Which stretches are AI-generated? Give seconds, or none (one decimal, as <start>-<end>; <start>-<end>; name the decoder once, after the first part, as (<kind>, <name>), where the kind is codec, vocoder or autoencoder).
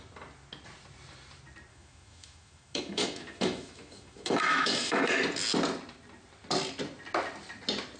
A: 1.7-5.2 (autoencoder, DAC-VAE)